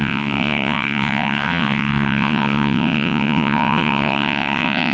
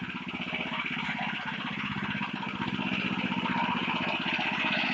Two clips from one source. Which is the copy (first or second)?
first